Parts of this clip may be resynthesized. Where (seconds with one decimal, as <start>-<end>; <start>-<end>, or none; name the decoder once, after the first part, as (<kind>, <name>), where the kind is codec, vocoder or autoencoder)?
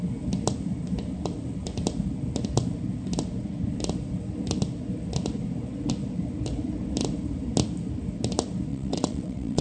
8.7-9.6 (vocoder, WaveNeXt)